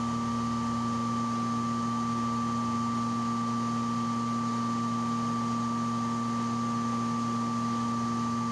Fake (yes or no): no